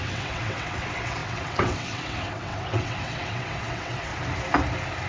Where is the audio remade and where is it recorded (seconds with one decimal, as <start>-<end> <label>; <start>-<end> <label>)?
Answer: 0.0-4.1 remade; 4.1-5.1 recorded